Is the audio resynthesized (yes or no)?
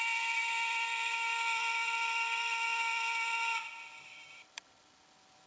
yes